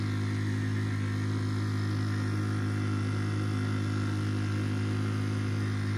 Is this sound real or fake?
real